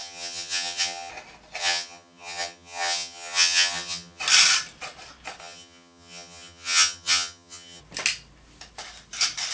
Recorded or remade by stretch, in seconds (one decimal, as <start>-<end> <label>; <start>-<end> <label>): 0.0-1.1 remade; 1.1-1.6 recorded; 1.6-4.2 remade; 4.2-5.4 recorded; 5.4-7.8 remade; 7.8-9.5 recorded